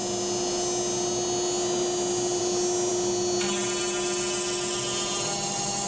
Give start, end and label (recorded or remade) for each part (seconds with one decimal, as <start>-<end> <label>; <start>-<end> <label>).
0.0-5.9 recorded

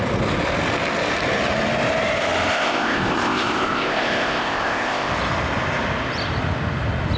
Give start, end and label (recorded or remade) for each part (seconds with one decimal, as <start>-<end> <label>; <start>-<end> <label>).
0.0-2.5 recorded; 2.5-5.1 remade; 5.1-7.2 recorded

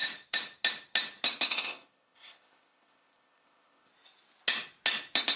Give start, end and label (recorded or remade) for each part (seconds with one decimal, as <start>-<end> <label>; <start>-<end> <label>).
0.0-1.5 recorded; 1.5-3.9 remade; 3.9-5.4 recorded

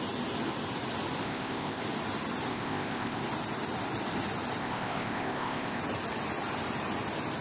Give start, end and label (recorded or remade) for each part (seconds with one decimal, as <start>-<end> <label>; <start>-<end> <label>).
0.0-1.2 recorded; 1.2-1.8 remade; 1.8-2.5 recorded; 2.5-3.2 remade; 3.2-4.6 recorded; 4.6-5.8 remade; 5.8-7.4 recorded